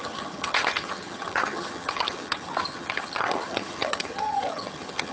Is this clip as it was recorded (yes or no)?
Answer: no